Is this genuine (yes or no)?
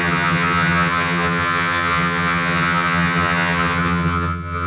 no